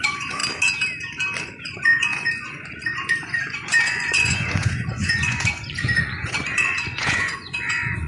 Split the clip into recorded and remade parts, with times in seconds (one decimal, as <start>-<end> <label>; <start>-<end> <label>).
0.0-0.4 remade; 0.4-1.4 recorded; 1.4-8.1 remade